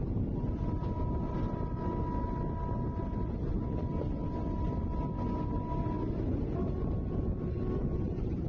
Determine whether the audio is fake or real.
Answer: real